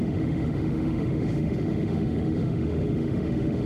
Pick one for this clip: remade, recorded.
remade